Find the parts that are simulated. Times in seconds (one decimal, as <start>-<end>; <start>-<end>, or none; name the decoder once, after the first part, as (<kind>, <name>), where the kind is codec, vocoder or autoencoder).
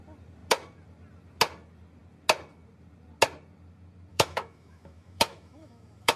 4.1-6.2 (autoencoder, DAC-VAE)